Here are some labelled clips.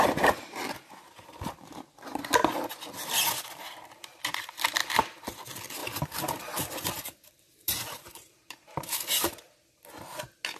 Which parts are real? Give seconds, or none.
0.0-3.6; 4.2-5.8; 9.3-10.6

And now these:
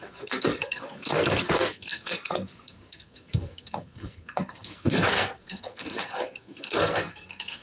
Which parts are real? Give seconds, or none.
none

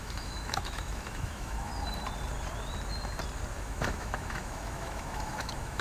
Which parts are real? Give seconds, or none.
1.7-3.6

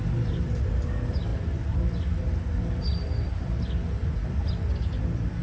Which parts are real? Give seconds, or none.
0.0-1.3; 4.5-5.4

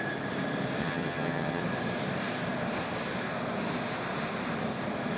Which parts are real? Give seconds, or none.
0.0-0.8; 1.6-5.2

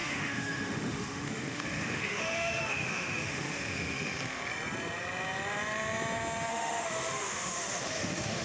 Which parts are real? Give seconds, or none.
4.4-6.5

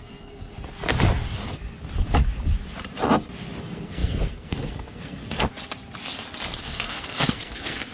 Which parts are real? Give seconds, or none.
0.5-3.6; 5.5-6.6